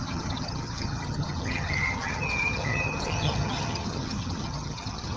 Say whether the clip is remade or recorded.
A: remade